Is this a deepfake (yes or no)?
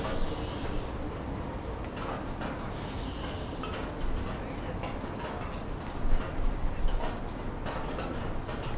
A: no